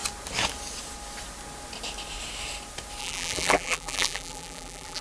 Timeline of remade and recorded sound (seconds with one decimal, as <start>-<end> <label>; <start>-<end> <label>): 0.0-3.0 recorded; 3.0-5.0 remade